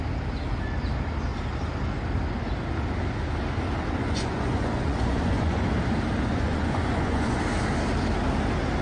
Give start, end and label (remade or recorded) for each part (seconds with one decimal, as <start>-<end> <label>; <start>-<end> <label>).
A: 0.0-4.0 recorded; 4.0-5.6 remade; 5.6-6.3 recorded; 6.3-7.4 remade; 7.4-8.8 recorded